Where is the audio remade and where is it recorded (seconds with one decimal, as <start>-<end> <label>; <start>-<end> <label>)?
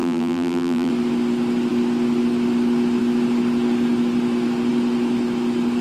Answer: 0.0-0.9 remade; 0.9-5.8 recorded